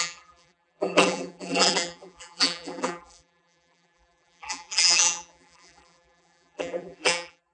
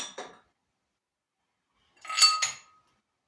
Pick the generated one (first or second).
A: first